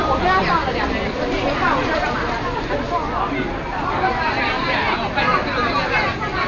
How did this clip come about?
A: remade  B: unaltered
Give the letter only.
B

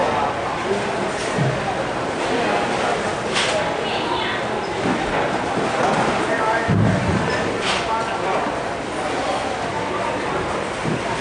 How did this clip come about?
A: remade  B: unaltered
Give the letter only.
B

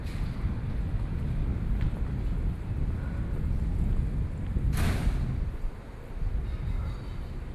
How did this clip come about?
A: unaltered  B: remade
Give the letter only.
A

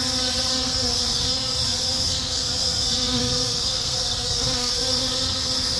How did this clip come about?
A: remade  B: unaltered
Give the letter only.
A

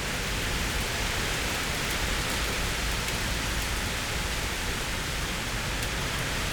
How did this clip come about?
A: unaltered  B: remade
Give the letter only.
A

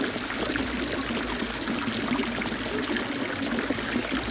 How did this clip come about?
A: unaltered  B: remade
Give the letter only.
A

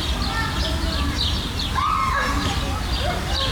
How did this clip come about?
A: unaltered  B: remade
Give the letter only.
A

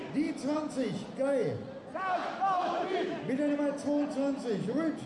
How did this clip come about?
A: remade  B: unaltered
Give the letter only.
B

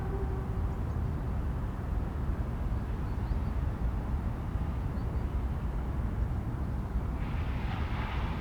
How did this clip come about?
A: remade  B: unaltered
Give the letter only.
B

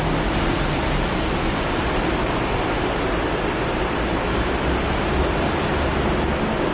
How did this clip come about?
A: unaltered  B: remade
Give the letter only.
A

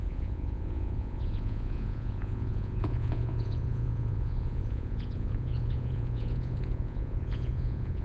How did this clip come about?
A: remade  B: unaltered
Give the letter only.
A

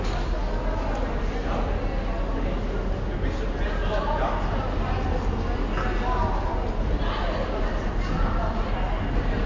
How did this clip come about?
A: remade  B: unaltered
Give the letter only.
B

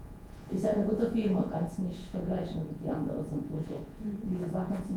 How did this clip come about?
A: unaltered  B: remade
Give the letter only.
B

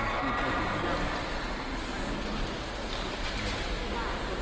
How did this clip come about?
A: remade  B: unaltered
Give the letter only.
B